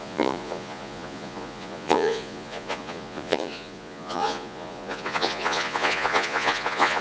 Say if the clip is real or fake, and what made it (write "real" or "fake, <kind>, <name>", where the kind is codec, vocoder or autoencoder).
fake, vocoder, Vocos